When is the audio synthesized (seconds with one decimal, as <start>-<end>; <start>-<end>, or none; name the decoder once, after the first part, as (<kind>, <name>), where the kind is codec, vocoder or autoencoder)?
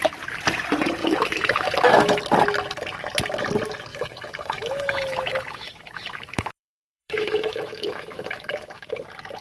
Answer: 1.0-2.2 (autoencoder, DAC-VAE); 3.9-8.9